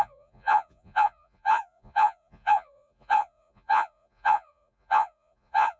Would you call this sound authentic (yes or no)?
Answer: no